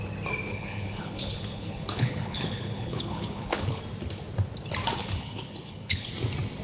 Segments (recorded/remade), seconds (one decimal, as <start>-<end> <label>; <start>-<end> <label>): 0.0-0.5 recorded; 0.5-3.8 remade; 3.8-5.0 recorded; 5.0-6.1 remade; 6.1-6.6 recorded